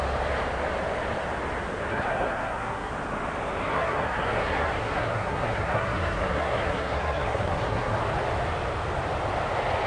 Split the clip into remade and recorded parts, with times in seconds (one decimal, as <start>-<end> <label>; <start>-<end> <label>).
0.0-1.9 recorded; 1.9-2.9 remade; 2.9-3.7 recorded; 3.7-8.0 remade; 8.0-9.9 recorded

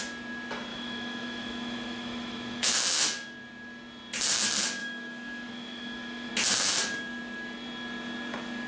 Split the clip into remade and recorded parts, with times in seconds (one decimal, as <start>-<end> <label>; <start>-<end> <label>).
0.0-0.7 recorded; 0.7-2.7 remade; 2.7-4.8 recorded; 4.8-6.3 remade; 6.3-8.7 recorded

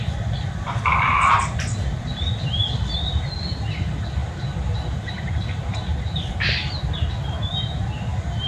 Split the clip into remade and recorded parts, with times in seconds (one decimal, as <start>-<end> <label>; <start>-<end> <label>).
0.0-4.2 recorded; 4.2-5.9 remade; 5.9-8.5 recorded